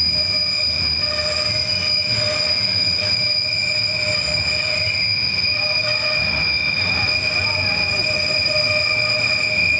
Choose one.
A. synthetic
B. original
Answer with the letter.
B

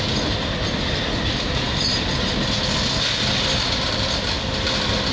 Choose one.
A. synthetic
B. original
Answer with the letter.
B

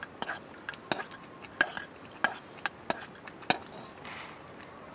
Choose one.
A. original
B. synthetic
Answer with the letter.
A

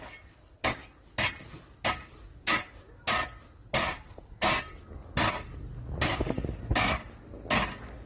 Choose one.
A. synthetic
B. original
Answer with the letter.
B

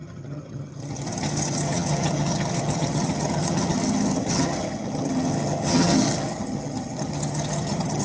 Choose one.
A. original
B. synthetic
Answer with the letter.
B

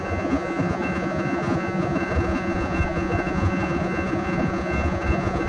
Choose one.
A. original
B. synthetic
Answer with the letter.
B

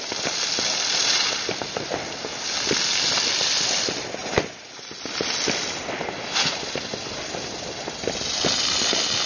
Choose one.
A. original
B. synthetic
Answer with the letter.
A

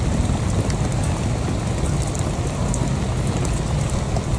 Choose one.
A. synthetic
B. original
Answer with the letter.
B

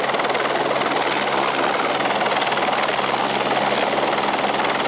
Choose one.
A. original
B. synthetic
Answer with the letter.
A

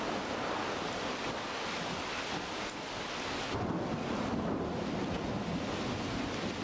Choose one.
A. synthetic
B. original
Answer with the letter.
B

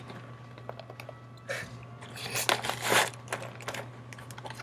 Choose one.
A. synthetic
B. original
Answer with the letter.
B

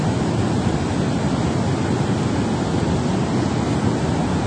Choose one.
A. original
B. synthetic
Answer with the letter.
A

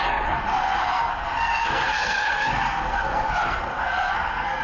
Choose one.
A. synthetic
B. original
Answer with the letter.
A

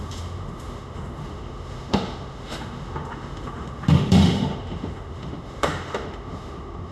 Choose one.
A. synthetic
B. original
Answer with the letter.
A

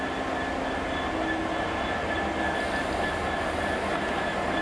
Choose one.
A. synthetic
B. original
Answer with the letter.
B